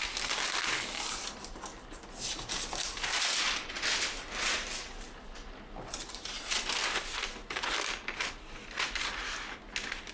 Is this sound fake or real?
real